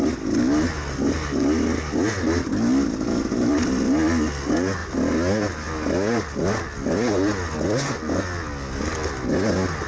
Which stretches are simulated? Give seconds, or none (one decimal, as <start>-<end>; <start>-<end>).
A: none